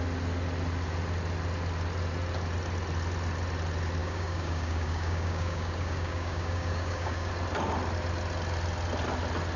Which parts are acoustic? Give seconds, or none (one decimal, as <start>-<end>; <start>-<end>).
0.0-4.0; 7.3-9.6